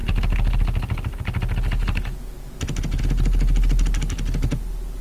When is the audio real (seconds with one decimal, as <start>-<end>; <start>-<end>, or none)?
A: 0.0-5.0

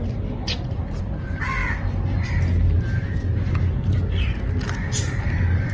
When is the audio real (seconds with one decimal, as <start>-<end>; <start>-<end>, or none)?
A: 0.0-5.7

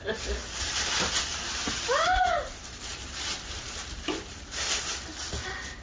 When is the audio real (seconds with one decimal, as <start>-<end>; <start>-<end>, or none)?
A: 0.0-0.4; 1.1-1.6; 4.9-5.8

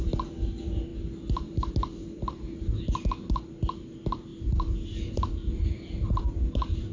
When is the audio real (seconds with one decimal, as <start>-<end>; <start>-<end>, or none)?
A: 0.0-6.9

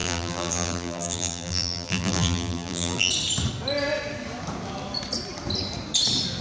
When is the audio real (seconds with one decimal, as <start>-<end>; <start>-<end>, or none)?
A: 3.1-6.4

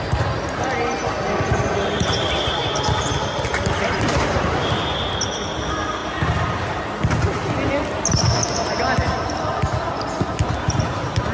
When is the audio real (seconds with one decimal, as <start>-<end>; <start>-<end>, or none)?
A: 0.0-3.5; 4.5-6.0; 6.8-11.3

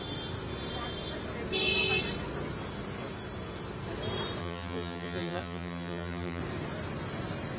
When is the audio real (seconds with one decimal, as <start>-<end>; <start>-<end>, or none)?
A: 0.0-4.4; 6.4-7.6

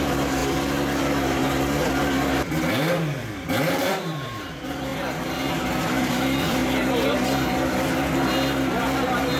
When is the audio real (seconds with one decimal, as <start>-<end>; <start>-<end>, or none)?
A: 0.4-1.0; 1.4-2.3; 6.6-9.4